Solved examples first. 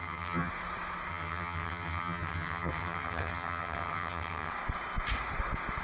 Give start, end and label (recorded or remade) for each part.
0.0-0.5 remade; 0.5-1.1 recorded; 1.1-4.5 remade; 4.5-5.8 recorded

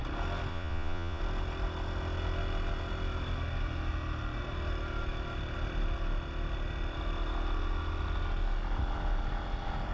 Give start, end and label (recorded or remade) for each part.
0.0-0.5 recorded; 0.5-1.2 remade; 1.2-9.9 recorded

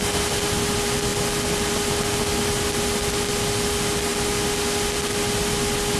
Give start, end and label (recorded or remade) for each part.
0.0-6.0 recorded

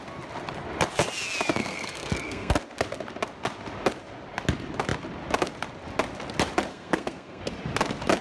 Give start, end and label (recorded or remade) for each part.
0.0-1.6 recorded; 1.6-2.5 remade; 2.5-6.7 recorded; 6.7-7.4 remade; 7.4-8.2 recorded

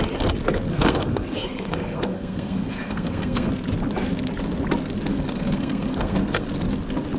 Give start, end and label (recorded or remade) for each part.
0.0-0.7 recorded; 0.7-3.5 remade; 3.5-5.1 recorded; 5.1-6.5 remade; 6.5-7.2 recorded

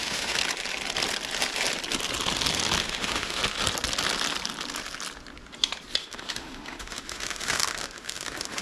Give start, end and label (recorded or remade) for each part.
0.0-0.4 remade; 0.4-2.8 recorded; 2.8-3.4 remade; 3.4-6.0 recorded; 6.0-8.6 remade